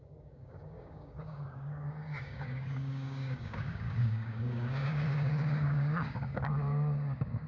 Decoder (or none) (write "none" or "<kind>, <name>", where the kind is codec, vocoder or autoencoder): codec, DAC